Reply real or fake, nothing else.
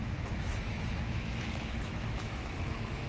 fake